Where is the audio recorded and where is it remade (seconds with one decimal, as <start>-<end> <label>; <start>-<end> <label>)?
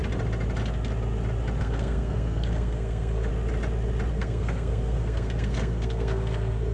0.0-1.6 recorded; 1.6-3.3 remade; 3.3-4.1 recorded; 4.1-6.7 remade